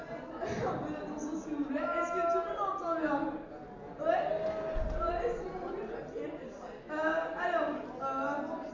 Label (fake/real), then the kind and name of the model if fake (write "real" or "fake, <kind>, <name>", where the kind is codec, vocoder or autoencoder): real